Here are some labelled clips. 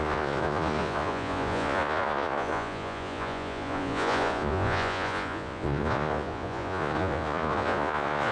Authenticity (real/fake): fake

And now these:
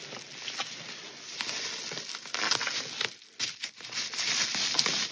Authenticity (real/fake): real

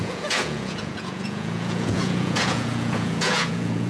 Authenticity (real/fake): fake